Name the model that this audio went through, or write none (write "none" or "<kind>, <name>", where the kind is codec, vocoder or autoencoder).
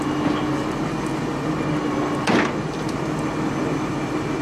none